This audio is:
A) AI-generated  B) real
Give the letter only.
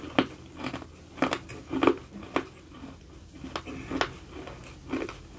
B